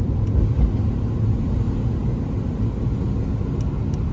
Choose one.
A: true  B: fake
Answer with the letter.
A